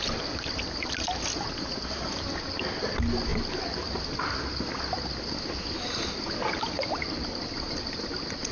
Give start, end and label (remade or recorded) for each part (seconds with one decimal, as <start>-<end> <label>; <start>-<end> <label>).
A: 0.0-8.5 recorded